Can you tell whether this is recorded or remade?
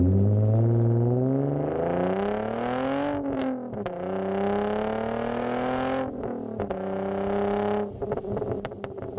recorded